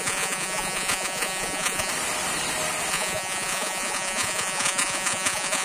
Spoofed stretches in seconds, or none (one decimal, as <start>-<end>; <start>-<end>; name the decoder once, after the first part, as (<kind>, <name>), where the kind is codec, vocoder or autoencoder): 0.0-1.9 (vocoder, Vocos); 2.9-5.6